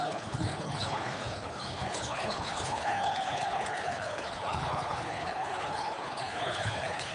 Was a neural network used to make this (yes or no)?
yes